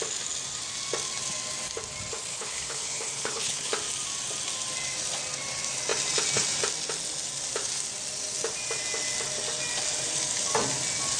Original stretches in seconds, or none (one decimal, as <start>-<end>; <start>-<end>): 0.0-2.3; 3.7-11.2